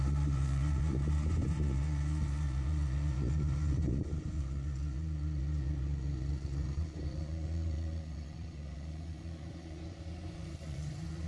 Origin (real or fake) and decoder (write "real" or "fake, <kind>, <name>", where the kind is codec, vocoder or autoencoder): fake, vocoder, Vocos